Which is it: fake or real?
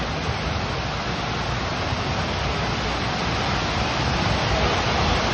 real